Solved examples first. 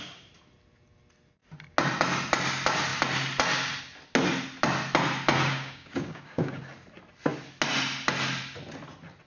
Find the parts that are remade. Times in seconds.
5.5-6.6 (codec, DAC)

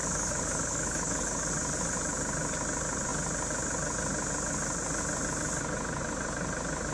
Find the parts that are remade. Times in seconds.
0.0-1.5 (codec, DAC)

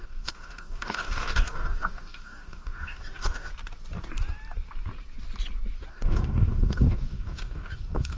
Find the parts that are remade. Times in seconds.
0.0-3.5 (codec, DAC); 5.9-8.2

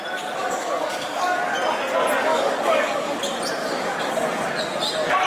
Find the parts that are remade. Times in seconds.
0.4-1.4 (codec, DAC); 2.3-3.2; 3.6-4.1

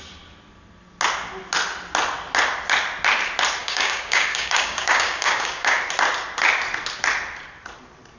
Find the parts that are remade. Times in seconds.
3.6-5.8 (codec, DAC)

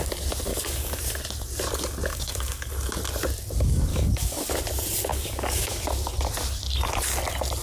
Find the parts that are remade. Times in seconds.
0.5-1.0 (codec, DAC); 2.1-2.7; 3.9-4.5; 5.1-5.8